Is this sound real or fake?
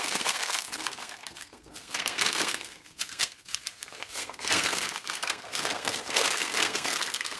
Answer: fake